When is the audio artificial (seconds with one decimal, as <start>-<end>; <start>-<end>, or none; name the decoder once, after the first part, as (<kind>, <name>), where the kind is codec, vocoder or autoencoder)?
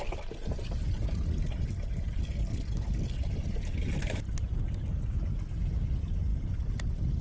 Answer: none